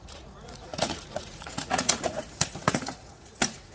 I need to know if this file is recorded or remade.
remade